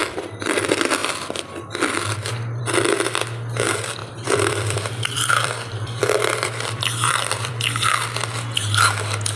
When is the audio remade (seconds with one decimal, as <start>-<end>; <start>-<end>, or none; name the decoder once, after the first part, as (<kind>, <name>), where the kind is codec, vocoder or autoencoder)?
0.0-0.6 (vocoder, BigVGAN v2); 4.0-7.6